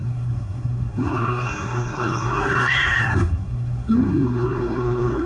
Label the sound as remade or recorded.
remade